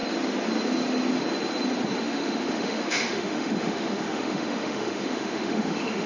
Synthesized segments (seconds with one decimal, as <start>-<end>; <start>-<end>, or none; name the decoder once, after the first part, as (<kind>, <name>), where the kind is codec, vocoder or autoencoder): 2.0-6.1 (autoencoder, DAC-VAE)